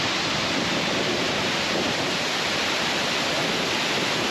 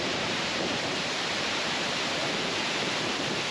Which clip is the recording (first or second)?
first